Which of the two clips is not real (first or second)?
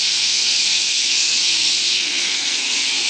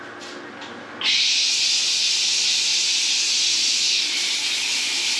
first